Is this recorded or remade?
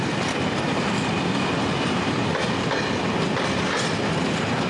recorded